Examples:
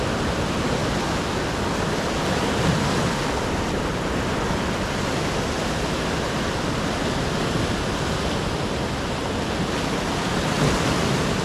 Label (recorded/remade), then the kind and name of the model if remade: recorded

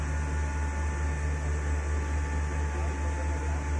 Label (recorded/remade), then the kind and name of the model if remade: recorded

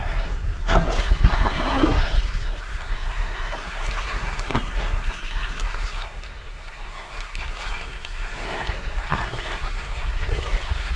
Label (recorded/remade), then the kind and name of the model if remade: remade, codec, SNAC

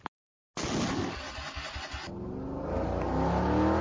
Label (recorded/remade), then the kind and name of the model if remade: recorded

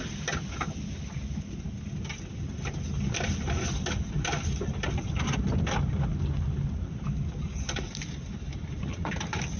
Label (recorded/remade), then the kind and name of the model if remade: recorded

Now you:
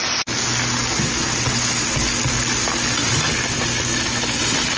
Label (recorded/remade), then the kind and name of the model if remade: recorded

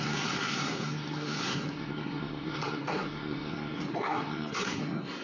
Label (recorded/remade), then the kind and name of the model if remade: remade, codec, SNAC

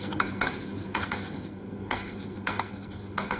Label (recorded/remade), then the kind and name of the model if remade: remade, codec, SNAC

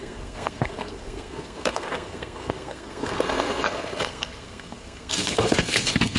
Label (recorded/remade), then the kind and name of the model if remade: remade, codec, SNAC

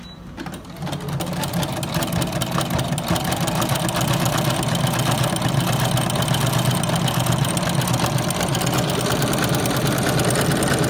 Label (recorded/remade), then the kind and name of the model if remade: recorded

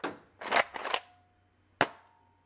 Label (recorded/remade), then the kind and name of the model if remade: recorded